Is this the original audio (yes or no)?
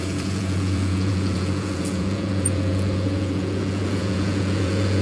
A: no